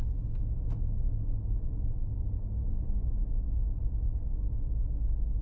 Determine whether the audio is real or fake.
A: real